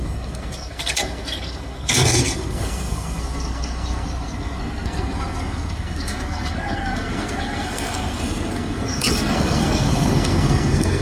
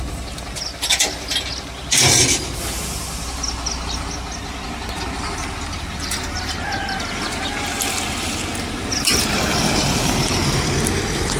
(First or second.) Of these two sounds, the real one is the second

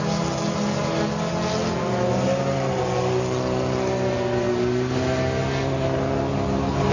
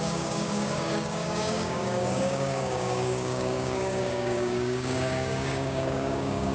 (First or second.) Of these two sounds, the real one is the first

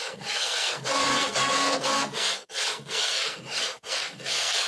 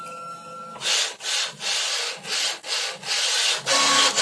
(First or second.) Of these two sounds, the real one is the second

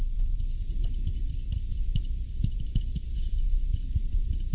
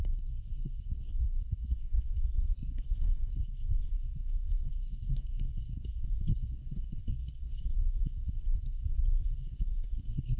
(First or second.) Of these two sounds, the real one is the first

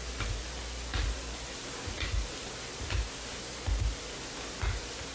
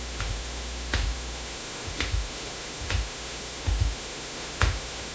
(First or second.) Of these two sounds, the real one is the first